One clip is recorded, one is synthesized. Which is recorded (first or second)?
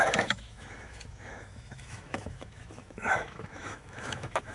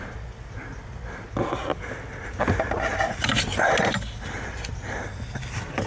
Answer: second